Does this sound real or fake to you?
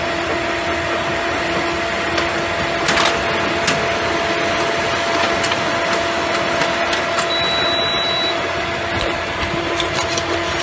real